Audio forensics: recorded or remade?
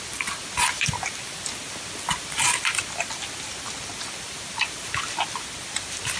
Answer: recorded